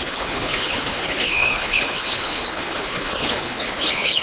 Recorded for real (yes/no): no